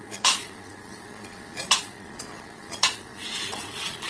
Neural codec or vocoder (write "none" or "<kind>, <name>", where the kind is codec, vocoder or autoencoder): vocoder, Vocos